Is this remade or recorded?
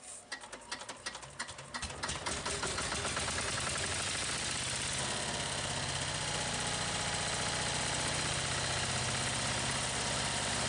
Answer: recorded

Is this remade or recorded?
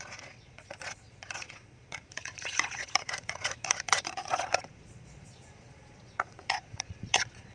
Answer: remade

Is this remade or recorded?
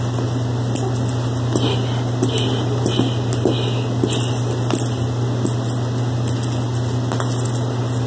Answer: recorded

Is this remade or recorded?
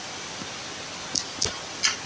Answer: recorded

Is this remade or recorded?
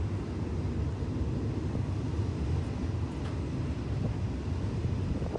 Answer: recorded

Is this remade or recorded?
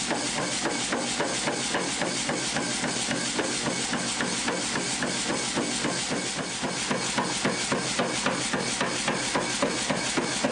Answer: recorded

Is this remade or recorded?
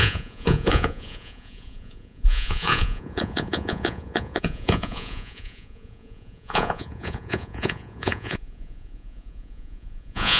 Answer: remade